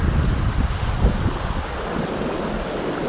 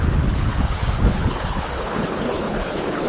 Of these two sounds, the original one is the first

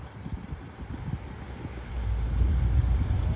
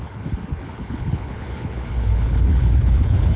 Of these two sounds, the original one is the first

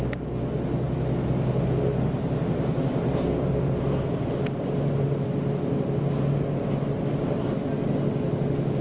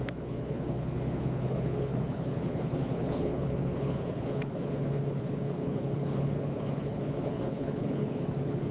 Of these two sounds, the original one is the first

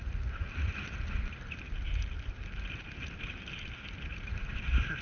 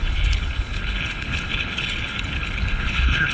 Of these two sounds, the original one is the first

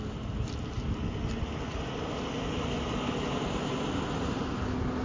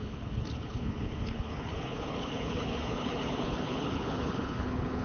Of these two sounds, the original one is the first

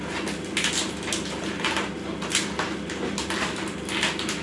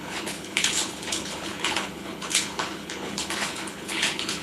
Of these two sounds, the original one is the first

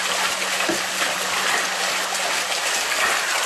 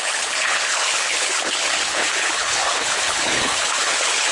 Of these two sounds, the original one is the first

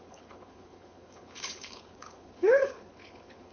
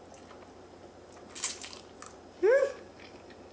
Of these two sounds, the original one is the second